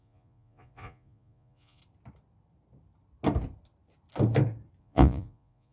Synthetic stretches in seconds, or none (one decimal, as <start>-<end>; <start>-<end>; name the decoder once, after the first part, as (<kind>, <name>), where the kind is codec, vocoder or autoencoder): 0.0-1.8 (vocoder, Vocos); 4.8-5.7